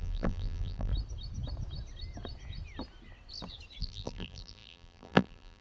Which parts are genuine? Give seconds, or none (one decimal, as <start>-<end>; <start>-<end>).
0.9-3.8